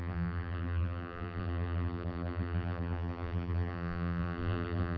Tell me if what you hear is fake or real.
fake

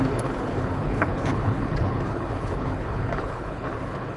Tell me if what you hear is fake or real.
fake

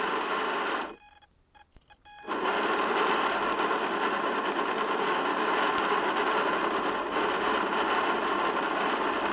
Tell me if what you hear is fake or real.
real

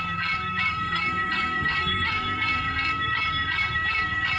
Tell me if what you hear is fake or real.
fake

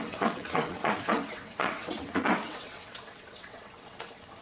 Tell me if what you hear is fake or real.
fake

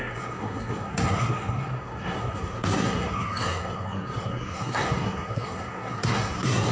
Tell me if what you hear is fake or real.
fake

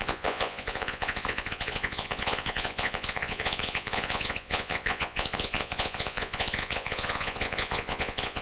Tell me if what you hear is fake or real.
fake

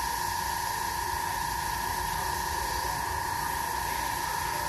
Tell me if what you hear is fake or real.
real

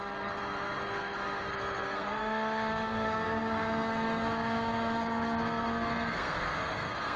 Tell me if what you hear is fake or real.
fake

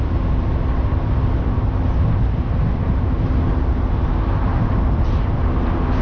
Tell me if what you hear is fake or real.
real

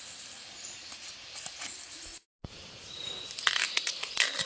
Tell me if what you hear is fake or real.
real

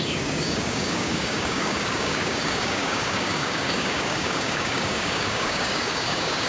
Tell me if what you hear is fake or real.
fake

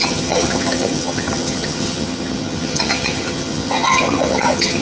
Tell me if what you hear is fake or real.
fake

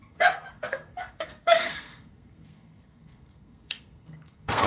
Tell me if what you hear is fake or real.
fake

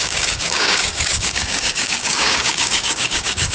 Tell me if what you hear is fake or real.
fake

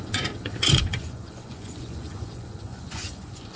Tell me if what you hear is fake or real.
fake